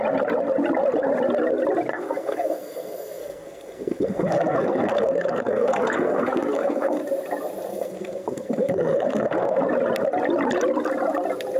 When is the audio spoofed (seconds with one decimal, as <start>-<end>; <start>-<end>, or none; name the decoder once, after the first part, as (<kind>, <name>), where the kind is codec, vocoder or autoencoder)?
1.9-7.0 (codec, SNAC); 7.7-9.6